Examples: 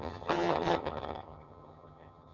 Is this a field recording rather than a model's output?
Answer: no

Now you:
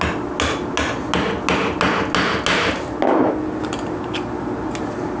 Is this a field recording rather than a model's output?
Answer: yes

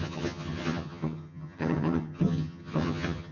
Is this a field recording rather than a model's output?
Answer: no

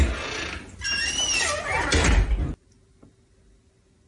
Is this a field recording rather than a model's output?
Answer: yes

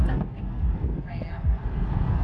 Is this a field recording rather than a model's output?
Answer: no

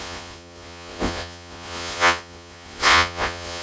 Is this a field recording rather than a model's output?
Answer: no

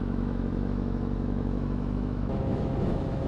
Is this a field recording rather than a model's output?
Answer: no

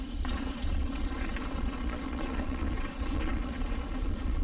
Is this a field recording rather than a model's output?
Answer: no